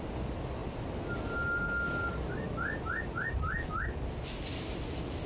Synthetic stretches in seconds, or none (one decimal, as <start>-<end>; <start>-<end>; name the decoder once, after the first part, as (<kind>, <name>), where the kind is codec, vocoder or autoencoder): none